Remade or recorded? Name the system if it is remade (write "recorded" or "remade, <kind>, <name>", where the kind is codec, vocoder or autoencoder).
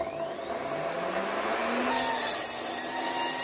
recorded